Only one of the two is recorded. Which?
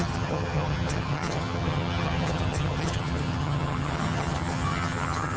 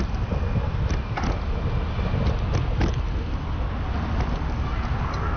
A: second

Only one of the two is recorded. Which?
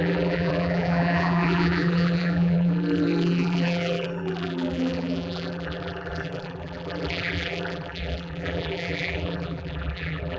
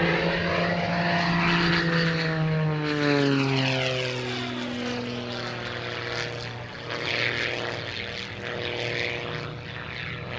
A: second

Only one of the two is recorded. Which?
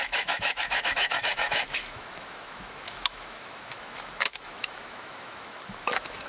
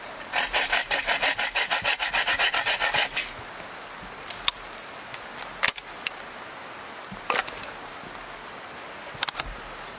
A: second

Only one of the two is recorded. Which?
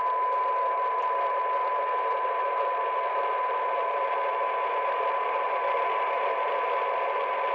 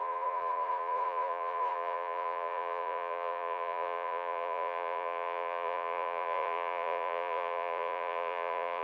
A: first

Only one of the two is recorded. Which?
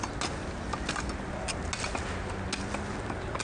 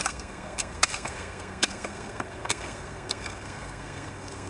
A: first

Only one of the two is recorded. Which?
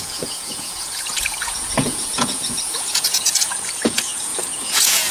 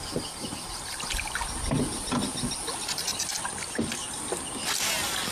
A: second